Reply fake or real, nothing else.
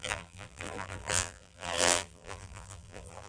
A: fake